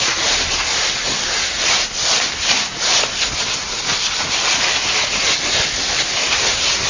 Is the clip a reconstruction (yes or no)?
no